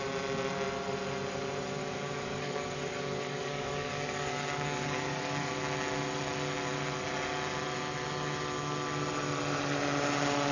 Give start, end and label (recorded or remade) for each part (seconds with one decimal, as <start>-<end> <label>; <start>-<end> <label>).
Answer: 0.0-1.8 recorded; 1.8-5.5 remade; 5.5-10.5 recorded